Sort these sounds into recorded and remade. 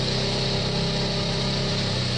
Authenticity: recorded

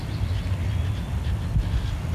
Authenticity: recorded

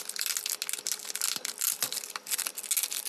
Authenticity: recorded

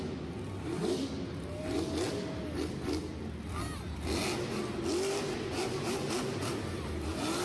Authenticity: recorded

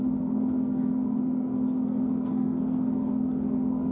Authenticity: remade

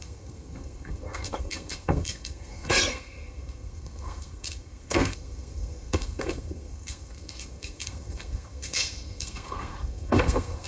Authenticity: remade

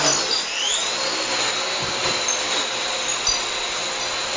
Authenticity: recorded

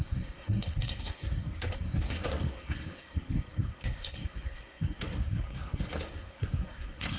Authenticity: remade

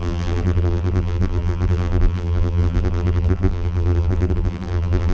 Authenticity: remade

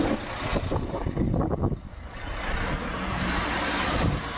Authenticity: recorded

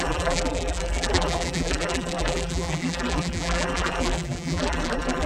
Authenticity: remade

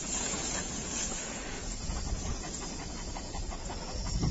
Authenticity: remade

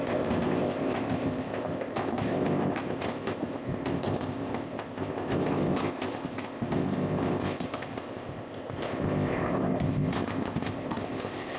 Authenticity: remade